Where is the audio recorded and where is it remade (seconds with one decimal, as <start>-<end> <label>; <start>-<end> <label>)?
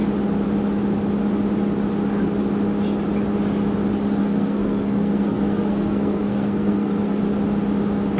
0.0-4.2 recorded; 4.2-7.2 remade; 7.2-8.2 recorded